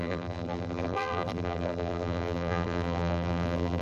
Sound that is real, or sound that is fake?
fake